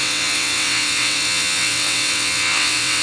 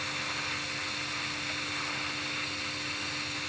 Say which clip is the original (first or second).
second